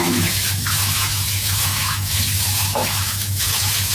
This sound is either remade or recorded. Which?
remade